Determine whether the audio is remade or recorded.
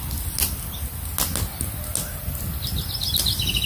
recorded